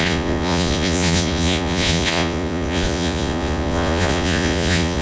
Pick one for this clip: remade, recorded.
remade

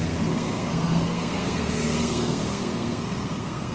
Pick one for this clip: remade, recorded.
remade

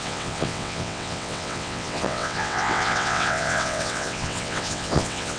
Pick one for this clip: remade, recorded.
remade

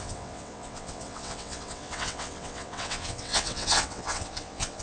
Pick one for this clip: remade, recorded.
remade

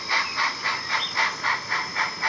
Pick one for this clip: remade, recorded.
recorded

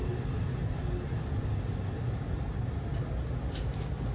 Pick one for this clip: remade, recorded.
recorded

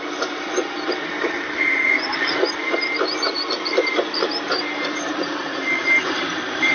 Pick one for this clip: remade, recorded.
remade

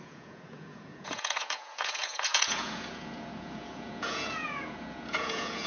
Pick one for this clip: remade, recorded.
remade